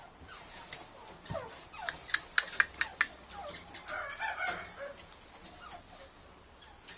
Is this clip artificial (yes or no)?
no